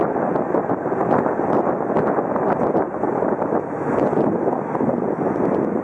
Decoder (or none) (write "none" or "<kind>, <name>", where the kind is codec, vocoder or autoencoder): none